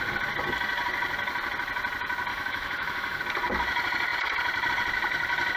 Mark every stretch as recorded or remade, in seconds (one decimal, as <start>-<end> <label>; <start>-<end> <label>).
0.0-2.3 recorded; 2.3-3.2 remade; 3.2-5.6 recorded